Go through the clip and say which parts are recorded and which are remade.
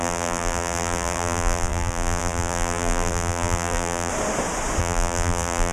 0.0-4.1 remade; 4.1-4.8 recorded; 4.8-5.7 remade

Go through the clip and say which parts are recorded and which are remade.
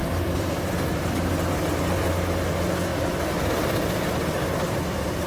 0.0-0.5 remade; 0.5-2.9 recorded; 2.9-3.5 remade; 3.5-5.3 recorded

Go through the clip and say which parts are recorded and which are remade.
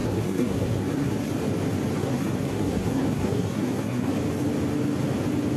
0.0-1.3 remade; 1.3-2.0 recorded; 2.0-4.1 remade; 4.1-5.6 recorded